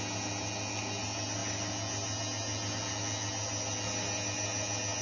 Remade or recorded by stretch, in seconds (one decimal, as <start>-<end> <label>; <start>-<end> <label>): 0.0-5.0 recorded